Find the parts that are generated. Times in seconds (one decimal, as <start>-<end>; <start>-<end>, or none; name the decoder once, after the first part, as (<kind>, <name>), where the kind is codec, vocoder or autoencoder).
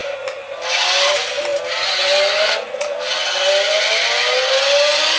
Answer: none